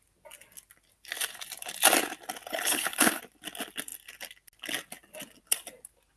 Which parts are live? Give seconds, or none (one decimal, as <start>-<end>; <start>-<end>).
0.0-2.5; 3.2-6.2